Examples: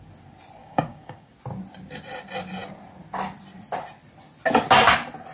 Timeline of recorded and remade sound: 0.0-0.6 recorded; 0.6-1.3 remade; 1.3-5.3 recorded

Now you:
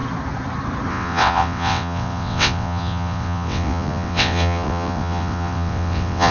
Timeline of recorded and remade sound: 0.0-0.9 recorded; 0.9-6.3 remade

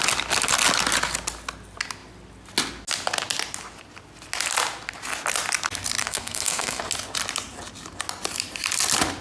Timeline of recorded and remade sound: 0.0-6.0 recorded; 6.0-6.8 remade; 6.8-9.2 recorded

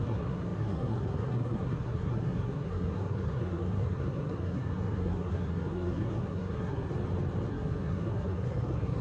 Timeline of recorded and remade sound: 0.0-6.9 remade; 6.9-7.5 recorded; 7.5-9.0 remade

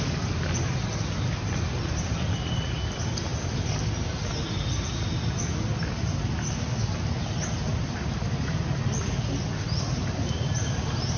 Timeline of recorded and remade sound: 0.0-11.2 recorded

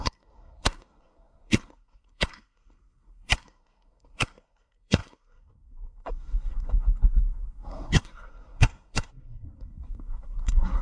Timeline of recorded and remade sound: 0.0-10.8 remade

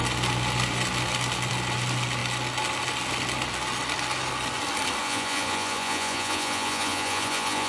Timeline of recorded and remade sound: 0.0-5.0 recorded; 5.0-7.7 remade